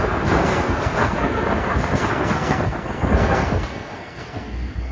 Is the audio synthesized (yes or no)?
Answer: yes